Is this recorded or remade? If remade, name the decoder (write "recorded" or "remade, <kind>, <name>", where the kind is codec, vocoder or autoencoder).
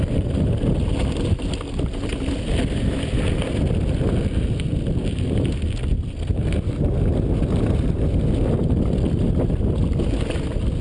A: recorded